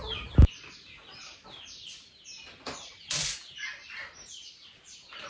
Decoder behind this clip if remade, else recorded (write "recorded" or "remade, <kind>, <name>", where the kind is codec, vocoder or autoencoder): recorded